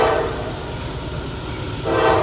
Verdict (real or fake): real